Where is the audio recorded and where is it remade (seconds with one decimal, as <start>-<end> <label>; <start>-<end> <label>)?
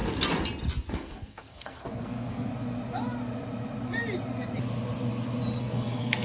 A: 0.0-0.9 recorded; 0.9-2.5 remade; 2.5-5.6 recorded; 5.6-6.2 remade